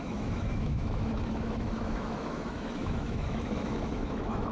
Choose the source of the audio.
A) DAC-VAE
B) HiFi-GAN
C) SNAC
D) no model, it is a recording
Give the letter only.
A